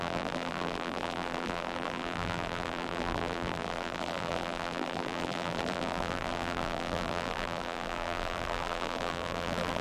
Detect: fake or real fake